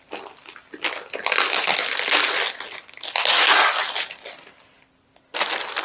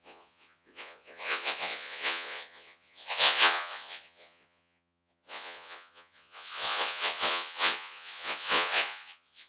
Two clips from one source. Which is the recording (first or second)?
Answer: first